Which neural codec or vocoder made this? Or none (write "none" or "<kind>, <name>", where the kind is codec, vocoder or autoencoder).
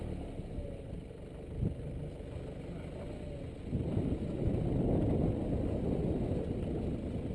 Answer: none